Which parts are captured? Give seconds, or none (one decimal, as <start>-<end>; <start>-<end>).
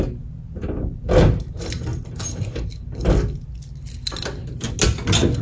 0.0-5.4